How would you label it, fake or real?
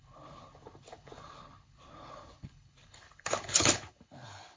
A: fake